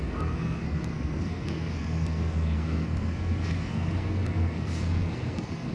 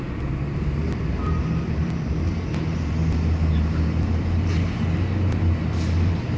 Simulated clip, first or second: first